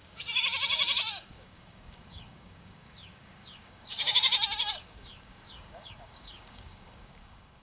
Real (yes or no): no